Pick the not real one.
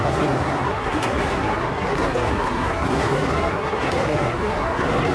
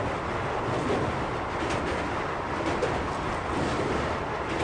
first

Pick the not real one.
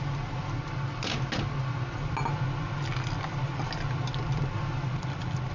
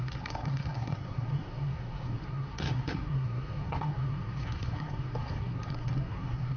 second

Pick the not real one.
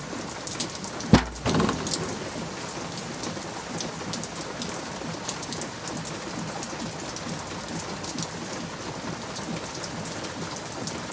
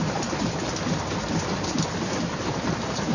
second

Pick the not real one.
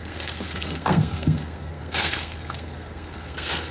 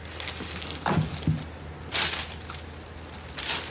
first